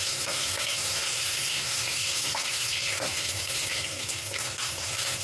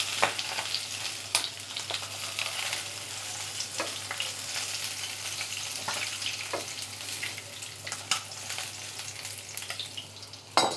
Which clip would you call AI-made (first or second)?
first